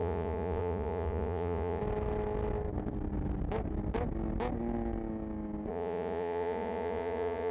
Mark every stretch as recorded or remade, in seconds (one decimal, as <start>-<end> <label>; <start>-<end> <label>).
0.0-1.8 remade; 1.8-5.7 recorded; 5.7-7.5 remade

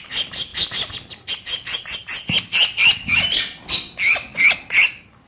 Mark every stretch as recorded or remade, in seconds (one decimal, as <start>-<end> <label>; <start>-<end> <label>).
0.0-5.3 recorded

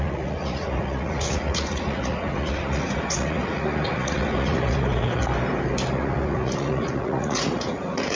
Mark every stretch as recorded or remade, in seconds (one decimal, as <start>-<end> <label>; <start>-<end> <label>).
0.0-5.2 remade; 5.2-5.9 recorded; 5.9-8.2 remade

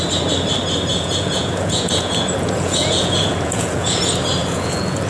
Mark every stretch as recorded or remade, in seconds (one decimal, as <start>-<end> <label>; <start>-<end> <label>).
0.0-0.9 recorded; 0.9-4.0 remade; 4.0-4.4 recorded; 4.4-5.1 remade

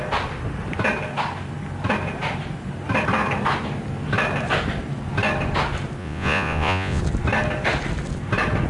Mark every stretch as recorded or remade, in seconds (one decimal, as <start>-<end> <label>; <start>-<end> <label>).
0.0-6.0 recorded; 6.0-7.0 remade; 7.0-8.7 recorded

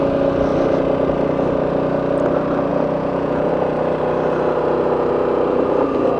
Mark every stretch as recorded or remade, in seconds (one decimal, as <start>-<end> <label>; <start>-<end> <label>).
0.0-2.7 recorded; 2.7-3.5 remade; 3.5-6.2 recorded

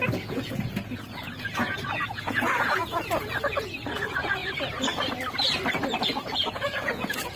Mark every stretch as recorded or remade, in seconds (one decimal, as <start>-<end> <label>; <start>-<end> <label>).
0.0-4.4 remade; 4.4-6.0 recorded; 6.0-7.4 remade